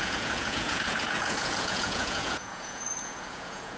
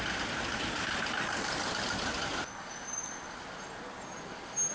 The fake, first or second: first